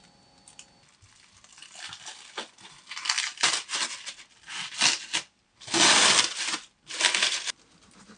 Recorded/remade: recorded